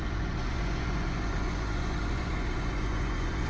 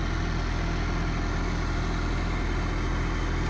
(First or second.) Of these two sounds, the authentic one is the second